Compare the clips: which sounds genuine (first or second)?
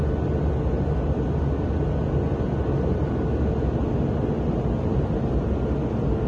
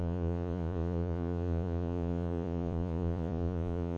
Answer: first